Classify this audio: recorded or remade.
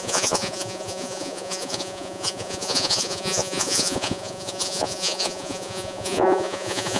remade